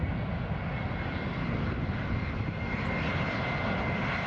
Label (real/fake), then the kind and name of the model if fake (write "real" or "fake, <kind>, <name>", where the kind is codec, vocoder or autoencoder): real